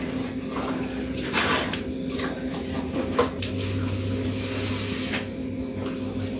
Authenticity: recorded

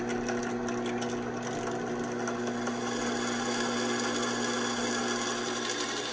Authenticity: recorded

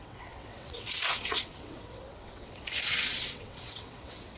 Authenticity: remade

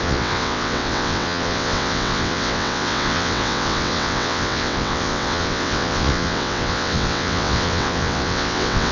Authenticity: remade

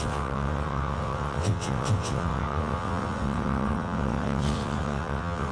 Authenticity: remade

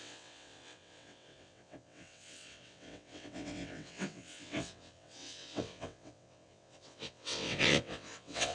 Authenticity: remade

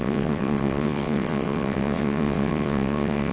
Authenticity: remade